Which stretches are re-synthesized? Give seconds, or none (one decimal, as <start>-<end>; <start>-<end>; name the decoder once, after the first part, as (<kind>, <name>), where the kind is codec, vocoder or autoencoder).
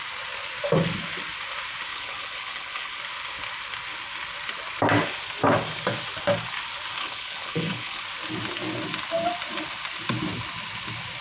1.9-3.0 (codec, HILCodec); 7.0-8.0